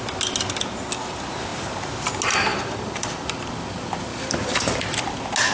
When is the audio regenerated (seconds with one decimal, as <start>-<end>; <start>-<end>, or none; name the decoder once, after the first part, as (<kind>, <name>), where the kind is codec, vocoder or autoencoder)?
2.5-3.5 (vocoder, BigVGAN v2); 4.1-4.7